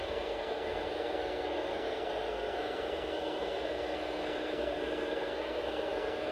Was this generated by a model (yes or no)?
yes